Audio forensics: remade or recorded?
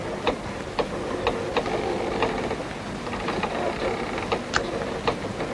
recorded